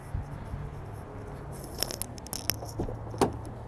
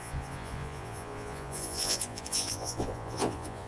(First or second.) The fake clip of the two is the second